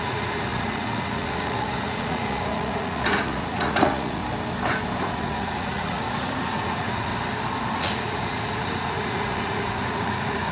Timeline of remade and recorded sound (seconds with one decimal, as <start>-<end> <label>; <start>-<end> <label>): 0.0-4.2 remade; 4.2-5.0 recorded; 5.0-7.1 remade; 7.1-7.8 recorded; 7.8-10.5 remade